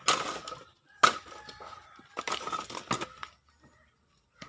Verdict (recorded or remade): recorded